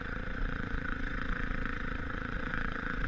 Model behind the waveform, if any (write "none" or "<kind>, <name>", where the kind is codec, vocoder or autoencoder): vocoder, Vocos